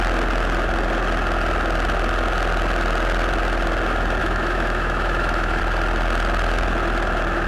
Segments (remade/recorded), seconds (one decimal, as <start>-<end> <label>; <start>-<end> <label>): 0.0-4.2 recorded; 4.2-5.6 remade; 5.6-7.5 recorded